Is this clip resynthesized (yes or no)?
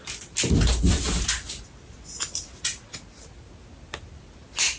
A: no